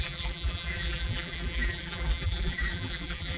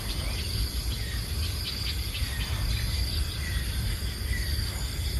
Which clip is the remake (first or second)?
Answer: first